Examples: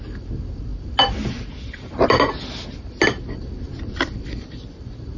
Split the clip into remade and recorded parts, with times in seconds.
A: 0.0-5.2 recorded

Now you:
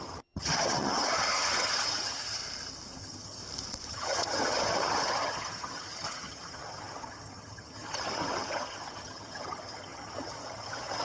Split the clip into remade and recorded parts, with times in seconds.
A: 0.0-2.4 remade; 2.4-3.0 recorded; 3.0-3.4 remade; 3.4-3.9 recorded; 3.9-11.0 remade

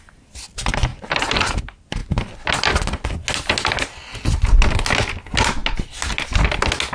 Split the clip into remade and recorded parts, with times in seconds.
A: 0.0-0.9 recorded; 0.9-1.6 remade; 1.6-6.9 recorded

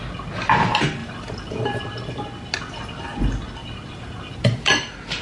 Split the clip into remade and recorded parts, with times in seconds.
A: 0.0-1.0 recorded; 1.0-1.8 remade; 1.8-3.6 recorded; 3.6-5.2 remade

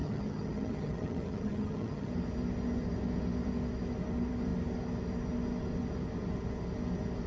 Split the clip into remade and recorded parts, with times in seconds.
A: 0.0-2.1 remade; 2.1-7.3 recorded

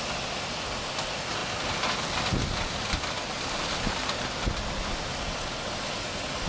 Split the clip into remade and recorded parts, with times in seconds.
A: 0.0-6.5 recorded